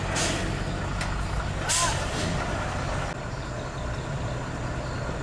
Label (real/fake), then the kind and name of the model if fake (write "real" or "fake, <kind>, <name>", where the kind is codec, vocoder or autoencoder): real